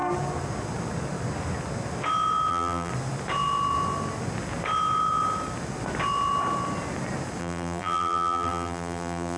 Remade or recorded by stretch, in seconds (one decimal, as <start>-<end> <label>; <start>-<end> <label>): 0.0-2.5 recorded; 2.5-2.9 remade; 2.9-7.4 recorded; 7.4-9.4 remade